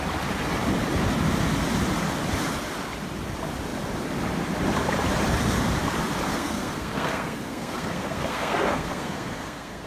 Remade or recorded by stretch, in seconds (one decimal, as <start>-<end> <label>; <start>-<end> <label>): 0.0-6.3 recorded; 6.3-9.9 remade